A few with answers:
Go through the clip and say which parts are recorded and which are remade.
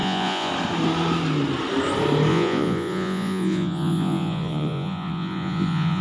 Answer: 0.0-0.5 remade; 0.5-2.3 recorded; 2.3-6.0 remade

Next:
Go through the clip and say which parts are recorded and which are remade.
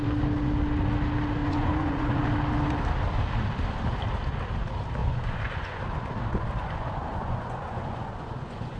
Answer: 0.0-1.4 recorded; 1.4-2.2 remade; 2.2-5.0 recorded; 5.0-5.8 remade; 5.8-6.6 recorded; 6.6-8.8 remade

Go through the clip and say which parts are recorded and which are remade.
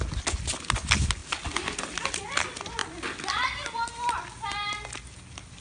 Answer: 0.0-5.6 recorded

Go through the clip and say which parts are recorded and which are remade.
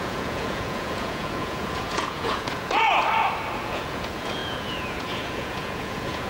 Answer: 0.0-2.9 remade; 2.9-3.6 recorded; 3.6-6.3 remade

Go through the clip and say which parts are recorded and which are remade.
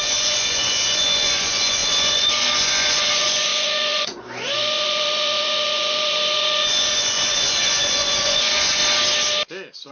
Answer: 0.0-8.8 remade; 8.8-9.9 recorded